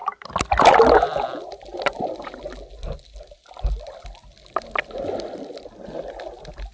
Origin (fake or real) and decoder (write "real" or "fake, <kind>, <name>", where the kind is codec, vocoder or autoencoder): real